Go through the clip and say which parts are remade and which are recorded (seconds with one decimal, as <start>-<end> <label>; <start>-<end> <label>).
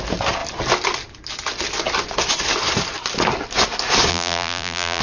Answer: 0.0-4.1 recorded; 4.1-5.0 remade